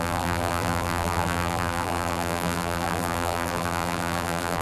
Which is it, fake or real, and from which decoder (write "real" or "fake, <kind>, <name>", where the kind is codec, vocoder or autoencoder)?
fake, vocoder, BigVGAN v2